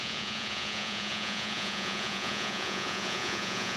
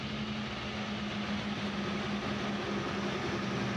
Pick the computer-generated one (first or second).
first